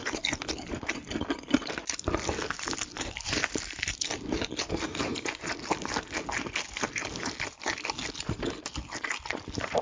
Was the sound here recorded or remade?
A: recorded